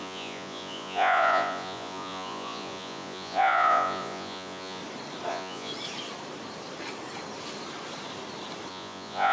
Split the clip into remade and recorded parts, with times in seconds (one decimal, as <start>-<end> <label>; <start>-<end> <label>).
0.0-4.8 remade; 4.8-5.3 recorded; 5.3-5.7 remade; 5.7-8.7 recorded; 8.7-9.3 remade